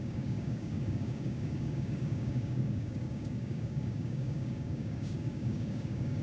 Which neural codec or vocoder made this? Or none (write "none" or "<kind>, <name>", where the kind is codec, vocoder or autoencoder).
codec, DAC